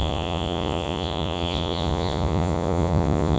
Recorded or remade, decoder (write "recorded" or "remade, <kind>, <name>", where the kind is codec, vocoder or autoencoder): remade, vocoder, Vocos